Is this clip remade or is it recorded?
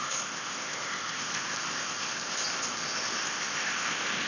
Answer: remade